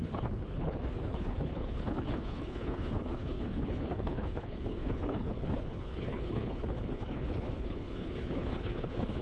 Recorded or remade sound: remade